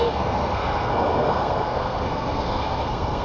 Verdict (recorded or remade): remade